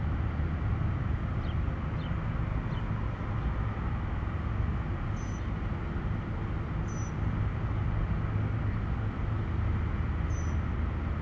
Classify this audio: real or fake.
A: real